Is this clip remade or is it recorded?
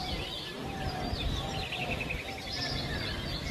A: remade